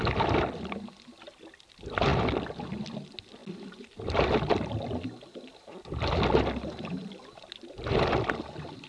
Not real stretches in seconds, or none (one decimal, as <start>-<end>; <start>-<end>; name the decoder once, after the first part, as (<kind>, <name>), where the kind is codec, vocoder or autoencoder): none